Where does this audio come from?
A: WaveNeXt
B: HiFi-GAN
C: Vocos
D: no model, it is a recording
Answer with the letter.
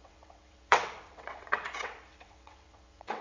A